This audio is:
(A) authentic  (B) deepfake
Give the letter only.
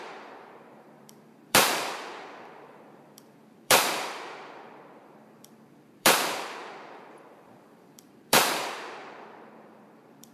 B